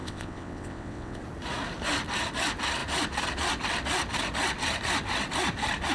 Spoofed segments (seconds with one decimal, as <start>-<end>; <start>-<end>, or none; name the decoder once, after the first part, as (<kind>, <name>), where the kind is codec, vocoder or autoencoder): 0.0-1.2 (vocoder, WaveNeXt)